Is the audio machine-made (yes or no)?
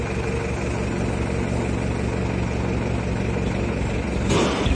no